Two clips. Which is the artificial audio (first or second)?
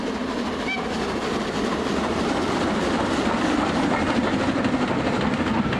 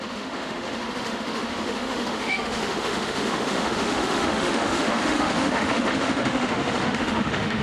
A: second